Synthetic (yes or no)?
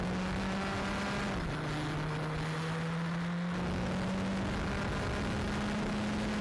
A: no